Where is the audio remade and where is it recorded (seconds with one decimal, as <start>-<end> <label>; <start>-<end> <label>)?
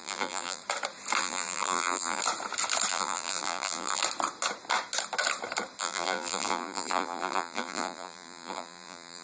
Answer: 0.0-0.6 remade; 0.6-1.2 recorded; 1.2-2.2 remade; 2.2-2.9 recorded; 2.9-4.0 remade; 4.0-5.8 recorded; 5.8-9.2 remade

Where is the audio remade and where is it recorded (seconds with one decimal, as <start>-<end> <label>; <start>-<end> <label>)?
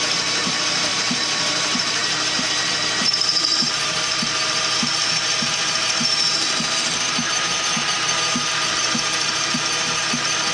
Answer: 0.0-10.5 remade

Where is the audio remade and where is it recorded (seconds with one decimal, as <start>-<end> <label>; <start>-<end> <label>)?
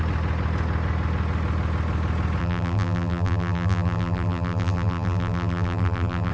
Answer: 0.0-2.4 recorded; 2.4-6.3 remade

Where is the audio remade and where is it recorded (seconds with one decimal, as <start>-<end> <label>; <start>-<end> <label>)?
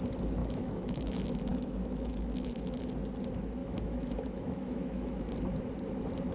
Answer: 0.0-0.4 recorded; 0.4-1.1 remade; 1.1-1.5 recorded; 1.5-2.9 remade; 2.9-3.6 recorded; 3.6-5.3 remade; 5.3-6.3 recorded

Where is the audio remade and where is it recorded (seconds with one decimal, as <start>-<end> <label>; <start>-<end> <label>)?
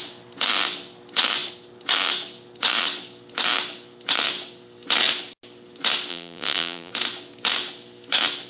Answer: 0.0-6.1 recorded; 6.1-6.9 remade; 6.9-8.5 recorded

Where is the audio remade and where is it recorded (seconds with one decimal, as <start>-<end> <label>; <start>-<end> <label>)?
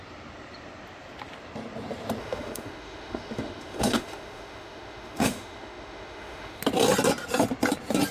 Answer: 0.0-2.2 recorded; 2.2-6.6 remade; 6.6-8.1 recorded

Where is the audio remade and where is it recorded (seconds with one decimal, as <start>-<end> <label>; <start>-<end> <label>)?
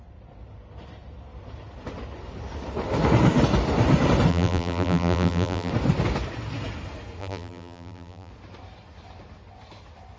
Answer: 0.0-4.3 recorded; 4.3-5.7 remade; 5.7-7.2 recorded; 7.2-8.3 remade; 8.3-10.2 recorded